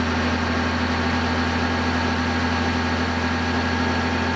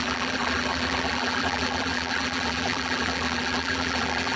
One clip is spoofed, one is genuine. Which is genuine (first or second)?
first